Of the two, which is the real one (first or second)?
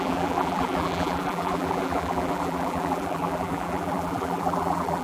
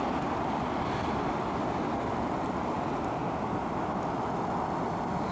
second